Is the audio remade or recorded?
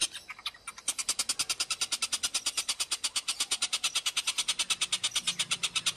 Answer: recorded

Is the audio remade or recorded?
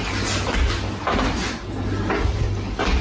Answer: recorded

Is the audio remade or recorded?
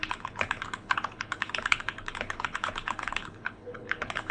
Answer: remade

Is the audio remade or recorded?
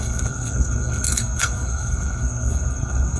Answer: remade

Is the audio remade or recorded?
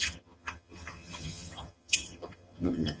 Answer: remade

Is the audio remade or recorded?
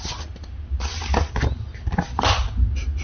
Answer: recorded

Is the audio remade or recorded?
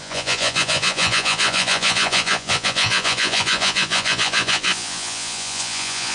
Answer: remade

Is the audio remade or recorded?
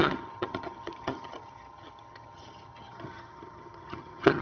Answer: remade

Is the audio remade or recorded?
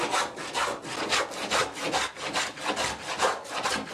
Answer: recorded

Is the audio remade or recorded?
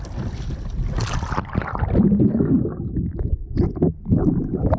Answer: recorded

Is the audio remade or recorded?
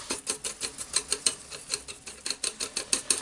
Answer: recorded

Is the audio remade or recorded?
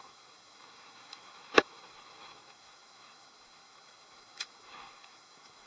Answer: remade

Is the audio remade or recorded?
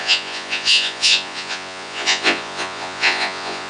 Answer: remade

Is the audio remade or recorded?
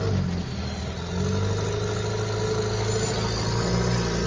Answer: recorded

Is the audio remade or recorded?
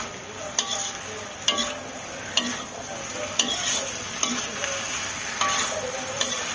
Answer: recorded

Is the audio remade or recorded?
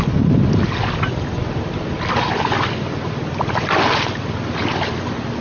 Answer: recorded